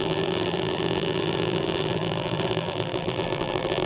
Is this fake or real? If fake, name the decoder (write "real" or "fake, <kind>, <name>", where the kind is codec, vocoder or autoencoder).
fake, vocoder, BigVGAN v2